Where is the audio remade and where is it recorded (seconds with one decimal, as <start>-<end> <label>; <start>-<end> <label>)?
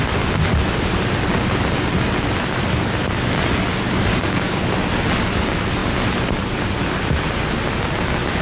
0.0-4.1 recorded; 4.1-4.6 remade; 4.6-8.4 recorded